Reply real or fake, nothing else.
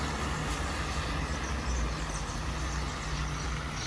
real